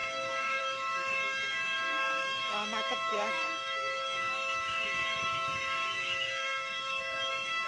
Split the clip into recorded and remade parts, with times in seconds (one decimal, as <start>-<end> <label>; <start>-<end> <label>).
0.0-7.7 remade